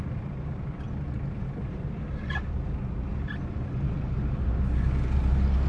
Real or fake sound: real